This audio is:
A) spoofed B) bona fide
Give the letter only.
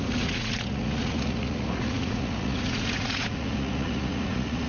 A